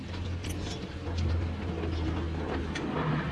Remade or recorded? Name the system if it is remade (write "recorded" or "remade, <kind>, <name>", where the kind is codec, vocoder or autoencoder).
recorded